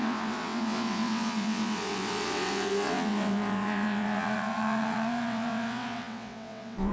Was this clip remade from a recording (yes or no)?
yes